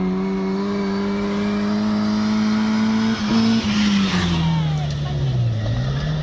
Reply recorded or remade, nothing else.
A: recorded